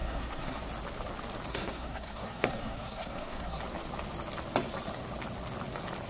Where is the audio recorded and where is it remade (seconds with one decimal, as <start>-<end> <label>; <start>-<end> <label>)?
0.0-0.6 remade; 0.6-1.5 recorded; 1.5-3.6 remade; 3.6-6.1 recorded